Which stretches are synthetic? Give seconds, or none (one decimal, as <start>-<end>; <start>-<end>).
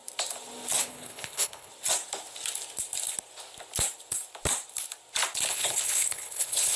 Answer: 0.8-1.7; 5.5-6.8